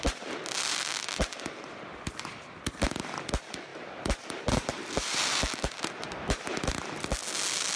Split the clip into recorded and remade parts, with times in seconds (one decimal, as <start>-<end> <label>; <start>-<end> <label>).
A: 0.0-7.8 recorded